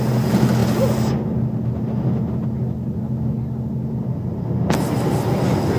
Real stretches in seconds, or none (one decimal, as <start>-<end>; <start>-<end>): 0.0-5.8